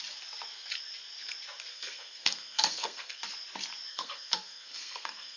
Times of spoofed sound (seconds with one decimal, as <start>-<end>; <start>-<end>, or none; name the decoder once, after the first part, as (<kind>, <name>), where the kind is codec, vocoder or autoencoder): 1.7-3.2 (codec, SNAC); 3.9-5.4